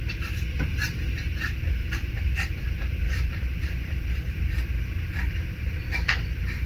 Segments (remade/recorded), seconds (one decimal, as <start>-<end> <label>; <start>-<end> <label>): 0.0-1.8 recorded; 1.8-5.8 remade; 5.8-6.7 recorded